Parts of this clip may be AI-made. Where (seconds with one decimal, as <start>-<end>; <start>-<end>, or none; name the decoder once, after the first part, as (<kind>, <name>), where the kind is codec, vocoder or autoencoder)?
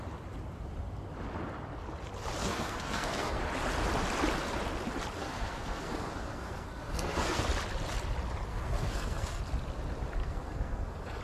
2.4-3.4 (codec, SNAC); 5.2-7.4; 8.5-9.4; 10.2-11.2